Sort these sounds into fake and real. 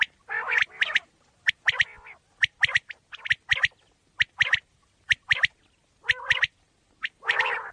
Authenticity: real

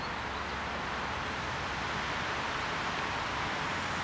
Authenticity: real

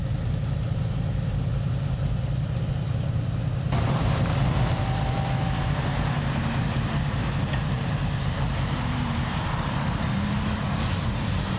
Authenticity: fake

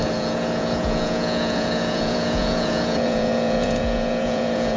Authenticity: fake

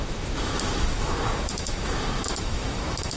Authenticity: fake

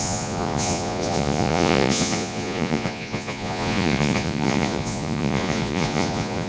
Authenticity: fake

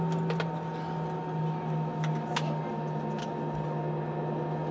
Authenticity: real